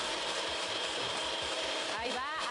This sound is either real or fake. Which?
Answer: fake